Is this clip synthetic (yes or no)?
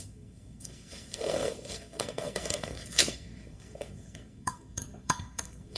yes